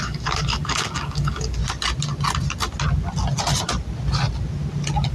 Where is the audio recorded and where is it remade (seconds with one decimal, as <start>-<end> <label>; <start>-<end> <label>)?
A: 0.0-1.6 remade; 1.6-5.1 recorded